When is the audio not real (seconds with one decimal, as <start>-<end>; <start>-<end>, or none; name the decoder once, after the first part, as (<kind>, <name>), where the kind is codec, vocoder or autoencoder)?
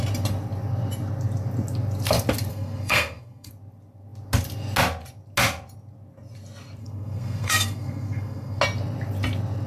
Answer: 2.5-3.5 (codec, SNAC); 6.8-8.6